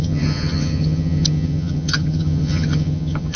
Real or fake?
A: fake